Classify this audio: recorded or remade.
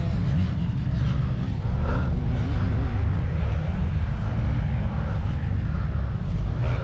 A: recorded